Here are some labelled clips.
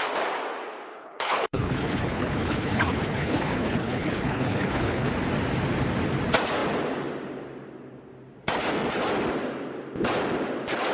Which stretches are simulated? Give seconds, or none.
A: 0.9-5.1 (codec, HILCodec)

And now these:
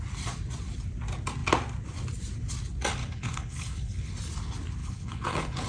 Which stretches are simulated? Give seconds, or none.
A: 3.0-4.1 (codec, HILCodec); 4.8-5.7

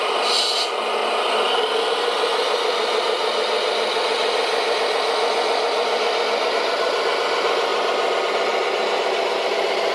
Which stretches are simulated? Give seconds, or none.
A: none

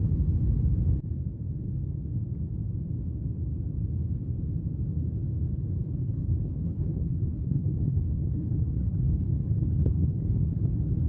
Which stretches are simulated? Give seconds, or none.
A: 6.0-10.6 (codec, HILCodec)

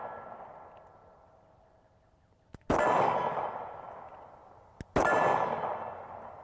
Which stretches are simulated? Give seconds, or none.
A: none

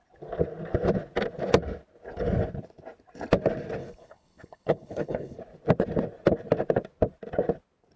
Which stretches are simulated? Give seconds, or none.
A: 3.8-5.4 (codec, HILCodec)

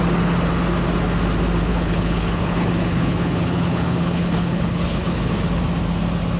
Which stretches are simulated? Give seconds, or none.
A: 1.7-5.5 (codec, HILCodec)

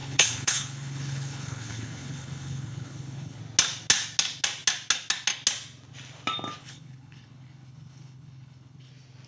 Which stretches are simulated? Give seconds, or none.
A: 0.0-3.4 (codec, HILCodec); 6.6-8.9